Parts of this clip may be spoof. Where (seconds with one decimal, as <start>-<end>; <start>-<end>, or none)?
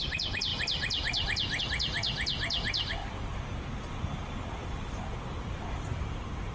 none